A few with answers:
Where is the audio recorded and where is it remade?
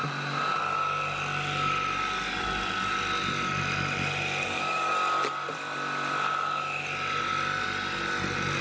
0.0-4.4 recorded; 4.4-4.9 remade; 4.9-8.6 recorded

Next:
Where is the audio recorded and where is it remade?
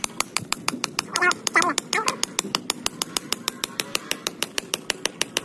0.0-1.1 remade; 1.1-3.1 recorded; 3.1-5.4 remade